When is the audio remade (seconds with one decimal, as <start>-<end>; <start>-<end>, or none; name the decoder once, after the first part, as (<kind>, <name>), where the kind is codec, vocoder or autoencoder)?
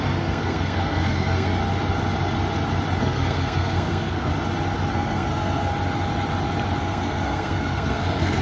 0.0-1.6 (codec, SNAC); 3.0-4.3; 4.9-5.7; 6.8-8.4